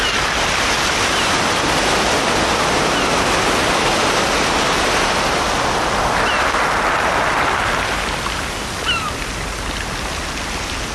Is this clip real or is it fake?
real